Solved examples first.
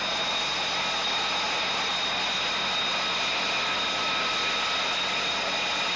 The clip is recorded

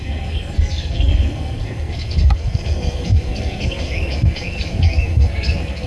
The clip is remade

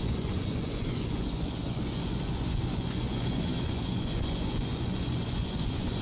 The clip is remade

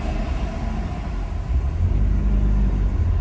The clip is recorded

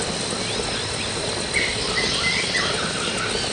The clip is recorded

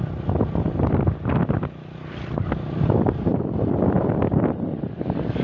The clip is recorded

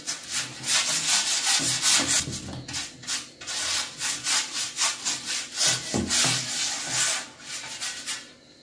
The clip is recorded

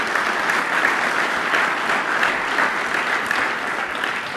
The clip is recorded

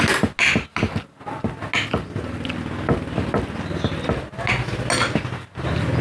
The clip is recorded